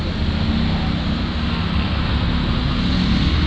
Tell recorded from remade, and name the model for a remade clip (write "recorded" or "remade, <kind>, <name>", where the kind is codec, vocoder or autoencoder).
recorded